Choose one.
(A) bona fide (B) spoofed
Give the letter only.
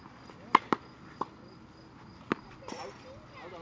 A